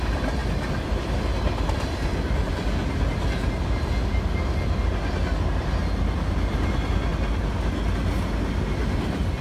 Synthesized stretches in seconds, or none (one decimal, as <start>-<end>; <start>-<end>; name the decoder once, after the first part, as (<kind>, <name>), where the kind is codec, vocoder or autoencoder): none